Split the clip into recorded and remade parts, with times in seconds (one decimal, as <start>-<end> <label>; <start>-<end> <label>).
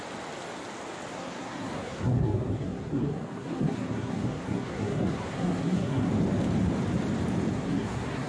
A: 0.0-1.1 recorded; 1.1-6.1 remade; 6.1-7.5 recorded; 7.5-8.3 remade